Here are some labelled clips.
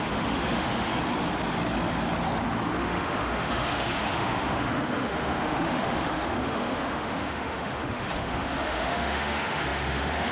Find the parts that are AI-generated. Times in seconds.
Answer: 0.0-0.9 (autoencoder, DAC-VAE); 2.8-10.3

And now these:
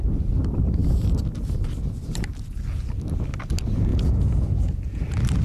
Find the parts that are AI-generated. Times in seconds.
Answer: 3.9-5.0 (vocoder, Vocos)

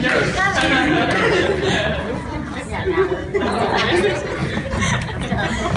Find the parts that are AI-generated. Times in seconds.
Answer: 0.8-2.5 (vocoder, Vocos); 3.3-4.0